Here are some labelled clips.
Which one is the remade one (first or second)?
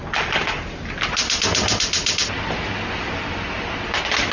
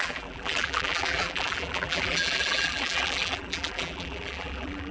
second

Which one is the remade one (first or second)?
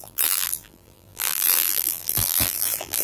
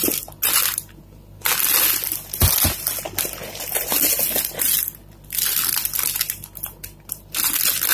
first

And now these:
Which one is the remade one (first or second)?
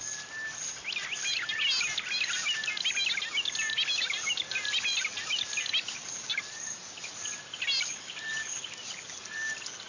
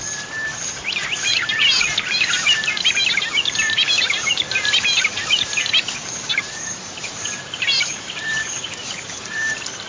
second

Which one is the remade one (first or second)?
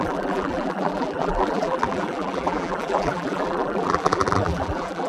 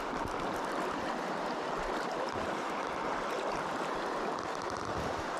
first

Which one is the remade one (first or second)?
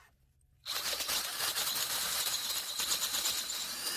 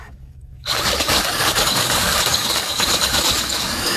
second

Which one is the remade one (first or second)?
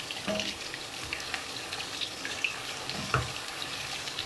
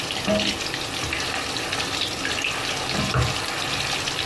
first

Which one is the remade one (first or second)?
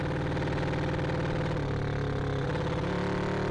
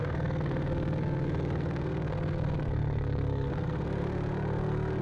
second